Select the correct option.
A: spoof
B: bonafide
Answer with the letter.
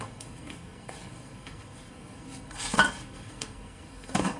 A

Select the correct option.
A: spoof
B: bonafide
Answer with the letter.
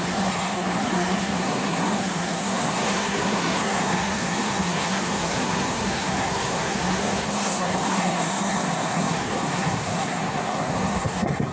A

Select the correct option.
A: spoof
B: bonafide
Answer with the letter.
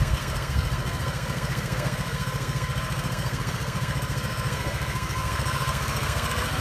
A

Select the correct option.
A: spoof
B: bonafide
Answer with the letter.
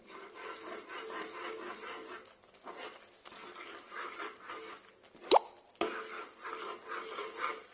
B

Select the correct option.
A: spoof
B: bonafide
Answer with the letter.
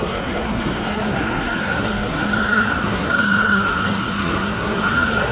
A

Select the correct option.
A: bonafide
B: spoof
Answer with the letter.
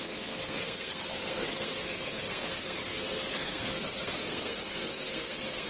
B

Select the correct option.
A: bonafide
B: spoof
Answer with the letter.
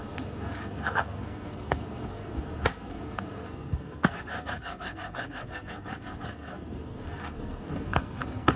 B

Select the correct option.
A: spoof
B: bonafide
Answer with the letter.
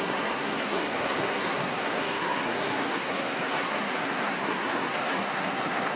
A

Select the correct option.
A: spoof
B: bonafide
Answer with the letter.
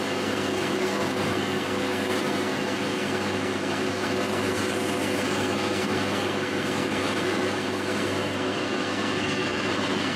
A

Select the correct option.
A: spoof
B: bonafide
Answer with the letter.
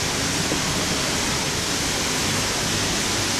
B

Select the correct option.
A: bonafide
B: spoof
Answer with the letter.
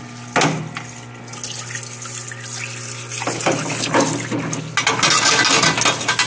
A